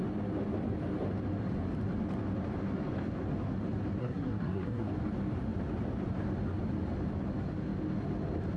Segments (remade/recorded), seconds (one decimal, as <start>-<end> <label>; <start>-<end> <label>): 0.0-4.0 recorded; 4.0-4.9 remade; 4.9-8.6 recorded